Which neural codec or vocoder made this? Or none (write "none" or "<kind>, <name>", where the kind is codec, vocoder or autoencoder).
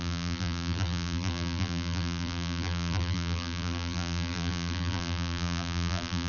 vocoder, BigVGAN v2